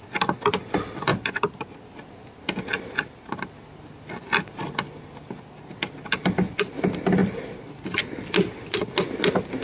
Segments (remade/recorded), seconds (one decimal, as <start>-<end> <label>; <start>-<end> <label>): 0.0-9.6 recorded